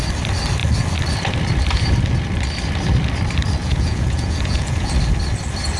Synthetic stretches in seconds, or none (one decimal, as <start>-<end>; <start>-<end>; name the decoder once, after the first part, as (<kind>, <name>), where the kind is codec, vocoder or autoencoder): 3.6-4.9 (vocoder, Vocos)